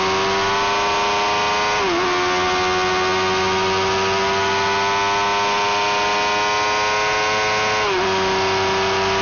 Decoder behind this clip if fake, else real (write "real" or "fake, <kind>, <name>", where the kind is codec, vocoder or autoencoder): real